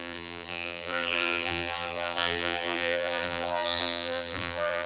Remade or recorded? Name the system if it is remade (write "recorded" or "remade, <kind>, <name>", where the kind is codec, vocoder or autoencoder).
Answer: remade, vocoder, BigVGAN v2